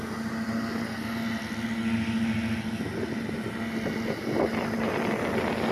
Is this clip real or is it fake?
real